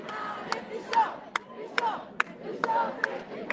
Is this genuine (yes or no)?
yes